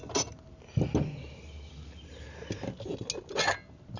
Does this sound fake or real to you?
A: real